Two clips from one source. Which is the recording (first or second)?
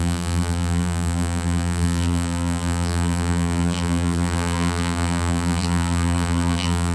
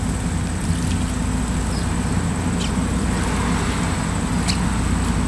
second